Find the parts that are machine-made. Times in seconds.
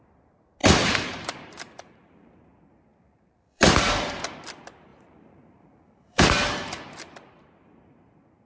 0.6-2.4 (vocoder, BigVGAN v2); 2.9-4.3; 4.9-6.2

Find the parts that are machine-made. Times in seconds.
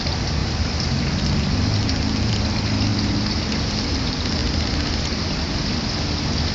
none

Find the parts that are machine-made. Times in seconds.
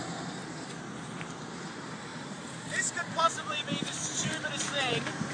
0.0-5.3 (vocoder, BigVGAN v2)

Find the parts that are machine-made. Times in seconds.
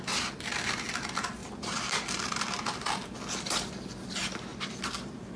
1.4-2.9 (vocoder, BigVGAN v2); 4.5-5.4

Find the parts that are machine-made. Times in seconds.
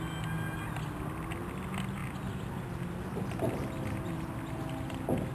none